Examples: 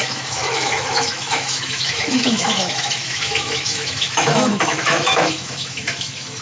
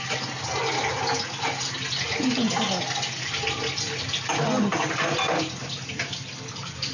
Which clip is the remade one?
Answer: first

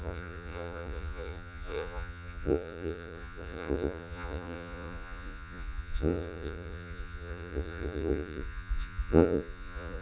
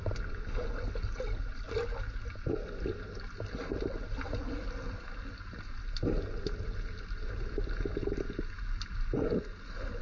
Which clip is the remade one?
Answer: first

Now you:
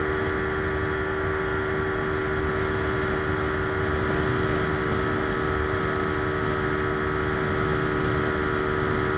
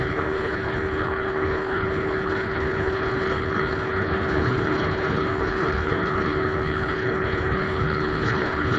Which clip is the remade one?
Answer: second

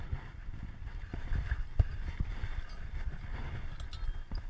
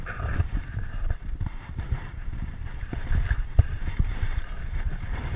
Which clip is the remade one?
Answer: second